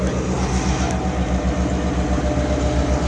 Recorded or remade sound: recorded